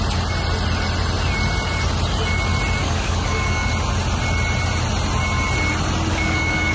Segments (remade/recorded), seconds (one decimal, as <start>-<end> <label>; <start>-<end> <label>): 0.0-2.8 recorded; 2.8-3.7 remade; 3.7-6.1 recorded; 6.1-6.7 remade